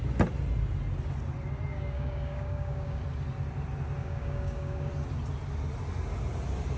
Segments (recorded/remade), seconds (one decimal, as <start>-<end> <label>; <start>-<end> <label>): 0.0-1.7 recorded; 1.7-3.0 remade; 3.0-4.0 recorded; 4.0-4.9 remade; 4.9-6.8 recorded